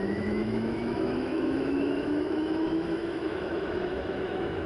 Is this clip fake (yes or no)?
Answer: yes